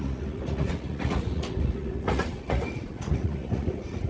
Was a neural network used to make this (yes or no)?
yes